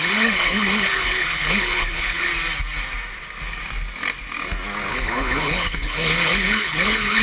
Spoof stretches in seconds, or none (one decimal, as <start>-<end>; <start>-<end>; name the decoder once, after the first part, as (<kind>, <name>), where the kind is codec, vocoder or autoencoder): 0.0-2.3 (codec, HILCodec); 4.9-7.2